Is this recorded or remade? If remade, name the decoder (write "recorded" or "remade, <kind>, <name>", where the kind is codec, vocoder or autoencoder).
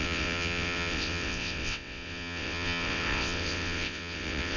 remade, vocoder, WaveNeXt